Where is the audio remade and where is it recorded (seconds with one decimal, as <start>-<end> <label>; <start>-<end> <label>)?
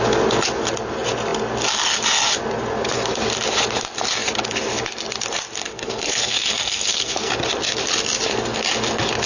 0.0-5.7 recorded; 5.7-7.3 remade; 7.3-9.3 recorded